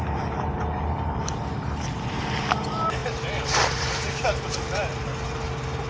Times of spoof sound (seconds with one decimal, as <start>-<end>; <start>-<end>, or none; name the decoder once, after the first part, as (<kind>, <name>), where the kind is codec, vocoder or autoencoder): 0.0-5.1 (vocoder, BigVGAN v2)